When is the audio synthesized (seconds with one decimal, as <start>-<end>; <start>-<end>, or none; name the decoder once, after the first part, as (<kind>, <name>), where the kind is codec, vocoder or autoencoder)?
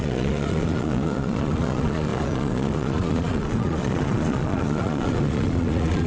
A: 0.0-6.1 (vocoder, Vocos)